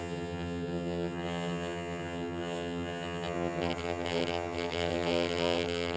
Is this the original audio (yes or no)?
no